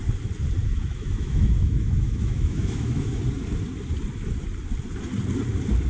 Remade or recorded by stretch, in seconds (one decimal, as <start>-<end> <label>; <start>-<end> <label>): 0.0-0.6 recorded; 0.6-3.2 remade; 3.2-5.9 recorded